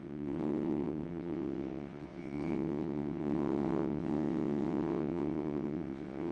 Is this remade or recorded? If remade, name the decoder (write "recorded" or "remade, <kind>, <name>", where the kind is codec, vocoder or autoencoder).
remade, vocoder, WaveNeXt